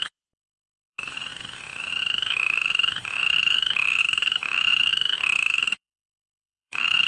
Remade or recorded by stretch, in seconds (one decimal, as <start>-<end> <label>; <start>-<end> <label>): 0.0-7.1 remade